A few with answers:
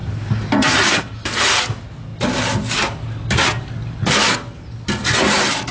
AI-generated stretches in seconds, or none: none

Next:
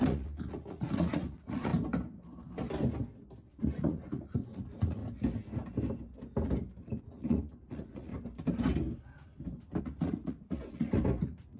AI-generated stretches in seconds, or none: 0.0-1.7 (vocoder, Vocos); 3.5-5.0; 7.0-8.1; 9.8-11.6